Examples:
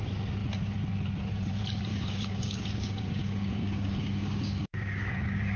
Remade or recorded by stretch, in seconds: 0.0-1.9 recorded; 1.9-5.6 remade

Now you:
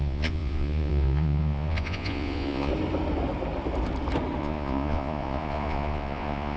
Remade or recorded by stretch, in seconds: 0.0-2.7 remade; 2.7-4.4 recorded; 4.4-6.6 remade

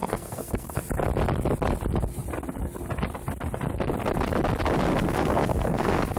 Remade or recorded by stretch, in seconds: 0.0-0.8 remade; 0.8-4.9 recorded; 4.9-6.2 remade